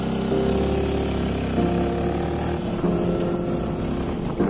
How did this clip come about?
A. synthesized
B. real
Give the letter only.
B